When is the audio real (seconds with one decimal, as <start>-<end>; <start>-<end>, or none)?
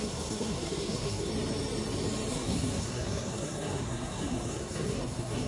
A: 1.3-2.3